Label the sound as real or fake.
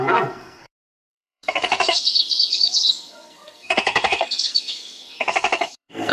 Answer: fake